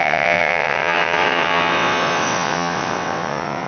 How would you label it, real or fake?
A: fake